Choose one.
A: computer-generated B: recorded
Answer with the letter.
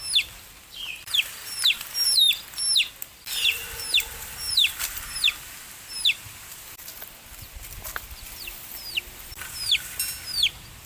B